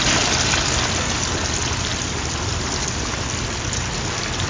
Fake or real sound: real